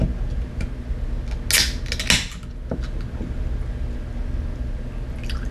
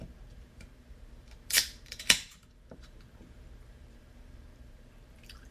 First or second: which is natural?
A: first